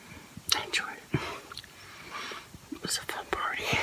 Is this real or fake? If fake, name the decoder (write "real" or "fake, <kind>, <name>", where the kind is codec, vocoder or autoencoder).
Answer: fake, vocoder, BigVGAN v2